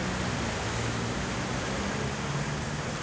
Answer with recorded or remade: recorded